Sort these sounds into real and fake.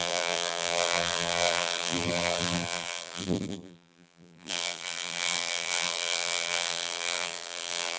fake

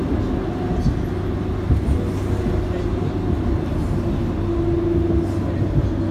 real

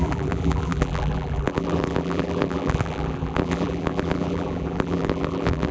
fake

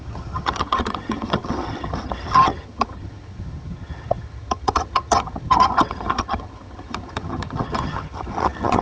fake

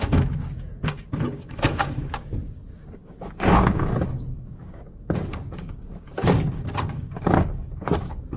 fake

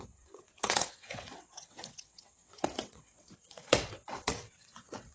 fake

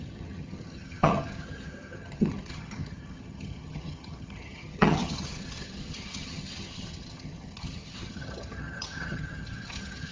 fake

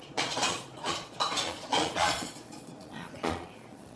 fake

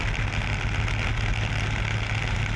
real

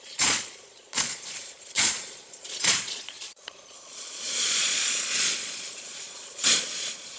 fake